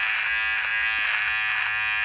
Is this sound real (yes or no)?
yes